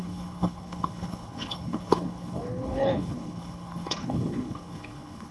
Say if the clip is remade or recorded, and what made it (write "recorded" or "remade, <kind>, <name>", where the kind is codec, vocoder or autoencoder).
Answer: remade, codec, HILCodec